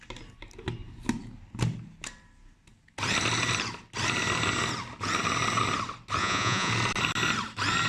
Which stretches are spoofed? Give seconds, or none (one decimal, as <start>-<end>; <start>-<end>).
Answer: 6.2-6.7